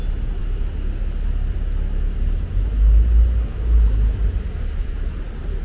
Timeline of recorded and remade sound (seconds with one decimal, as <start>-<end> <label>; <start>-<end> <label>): 0.0-5.6 recorded